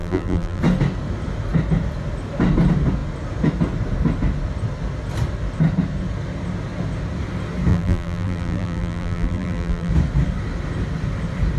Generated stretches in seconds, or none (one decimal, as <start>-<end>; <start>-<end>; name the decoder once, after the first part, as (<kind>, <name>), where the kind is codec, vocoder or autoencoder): 0.0-0.6 (vocoder, BigVGAN v2); 7.7-9.9